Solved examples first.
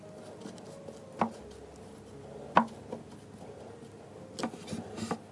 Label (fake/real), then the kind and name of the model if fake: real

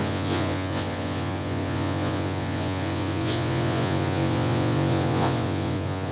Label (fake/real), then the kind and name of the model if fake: fake, vocoder, Vocos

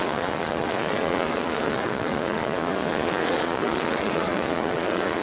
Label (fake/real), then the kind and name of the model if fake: fake, vocoder, Vocos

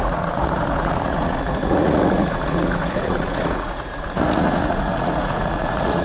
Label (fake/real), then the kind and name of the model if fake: fake, vocoder, Vocos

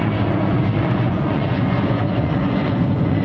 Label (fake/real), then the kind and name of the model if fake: fake, vocoder, Vocos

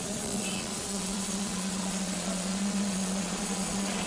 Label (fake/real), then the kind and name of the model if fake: fake, vocoder, Vocos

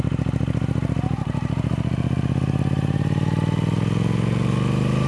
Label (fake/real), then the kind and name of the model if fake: real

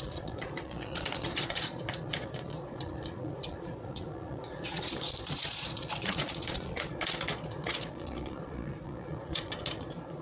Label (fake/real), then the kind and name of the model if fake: fake, vocoder, Vocos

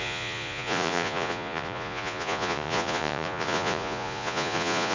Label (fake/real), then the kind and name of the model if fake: fake, vocoder, Vocos